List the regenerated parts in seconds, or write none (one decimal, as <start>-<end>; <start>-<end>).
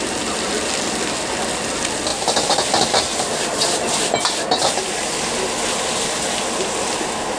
none